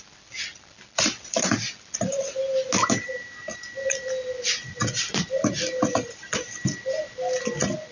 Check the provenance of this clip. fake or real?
real